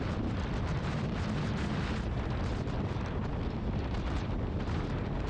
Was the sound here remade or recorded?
remade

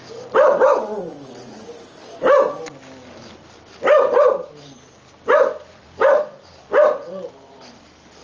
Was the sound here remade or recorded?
recorded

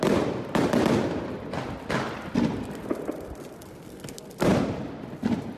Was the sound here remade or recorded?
recorded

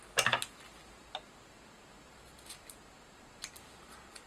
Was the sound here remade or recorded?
recorded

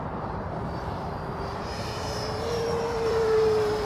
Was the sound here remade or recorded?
remade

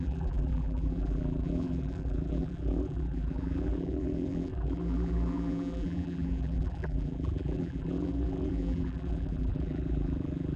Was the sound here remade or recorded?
remade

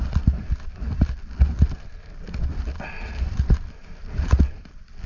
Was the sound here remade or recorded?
recorded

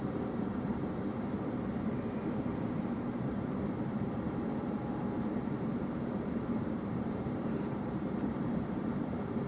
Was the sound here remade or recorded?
remade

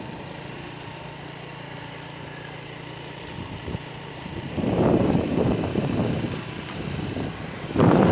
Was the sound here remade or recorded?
remade